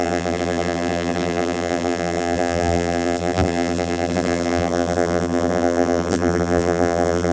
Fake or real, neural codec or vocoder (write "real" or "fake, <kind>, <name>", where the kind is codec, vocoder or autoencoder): fake, vocoder, BigVGAN v2